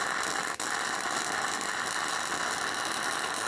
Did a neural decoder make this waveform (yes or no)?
no